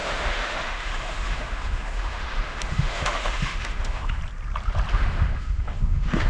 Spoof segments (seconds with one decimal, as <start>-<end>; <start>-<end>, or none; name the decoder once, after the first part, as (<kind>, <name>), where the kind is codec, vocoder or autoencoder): 0.0-4.2 (autoencoder, DAC-VAE); 4.9-6.3